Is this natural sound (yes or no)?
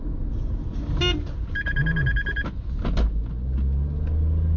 yes